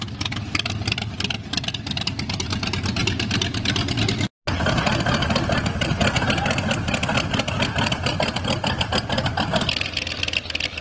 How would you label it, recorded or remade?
recorded